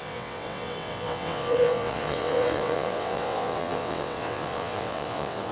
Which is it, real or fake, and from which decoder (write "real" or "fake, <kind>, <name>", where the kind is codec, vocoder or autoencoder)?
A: fake, vocoder, WaveNeXt